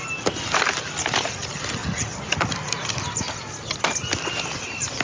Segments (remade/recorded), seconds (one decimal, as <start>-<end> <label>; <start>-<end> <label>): 0.0-5.0 recorded